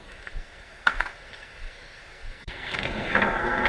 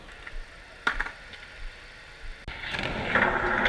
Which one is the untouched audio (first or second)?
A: second